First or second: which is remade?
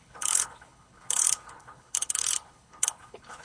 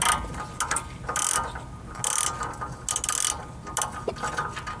first